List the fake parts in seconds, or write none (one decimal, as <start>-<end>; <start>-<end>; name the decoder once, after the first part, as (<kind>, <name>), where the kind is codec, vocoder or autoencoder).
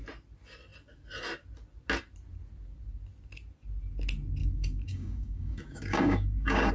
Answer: 4.4-6.7 (codec, DAC)